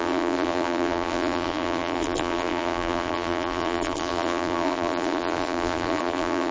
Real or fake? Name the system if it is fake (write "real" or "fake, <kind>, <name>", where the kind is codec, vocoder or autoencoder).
fake, vocoder, BigVGAN v2